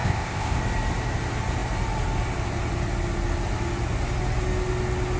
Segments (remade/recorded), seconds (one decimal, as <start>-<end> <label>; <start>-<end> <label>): 0.0-0.6 remade; 0.6-5.2 recorded